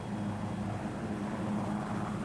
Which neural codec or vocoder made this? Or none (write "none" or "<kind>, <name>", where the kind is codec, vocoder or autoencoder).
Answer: none